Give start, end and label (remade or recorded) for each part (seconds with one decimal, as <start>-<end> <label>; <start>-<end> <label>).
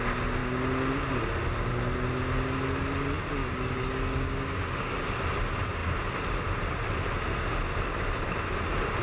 0.0-3.4 recorded; 3.4-5.0 remade; 5.0-9.0 recorded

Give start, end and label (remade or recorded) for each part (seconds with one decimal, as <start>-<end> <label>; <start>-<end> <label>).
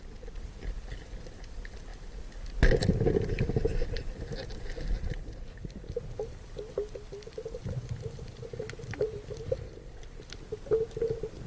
0.0-11.5 recorded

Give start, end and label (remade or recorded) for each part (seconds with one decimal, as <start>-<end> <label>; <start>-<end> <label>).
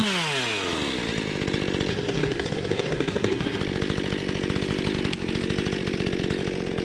0.0-1.9 recorded; 1.9-3.6 remade; 3.6-6.8 recorded